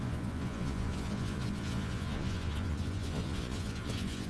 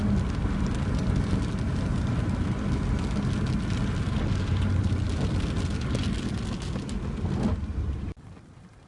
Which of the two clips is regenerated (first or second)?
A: first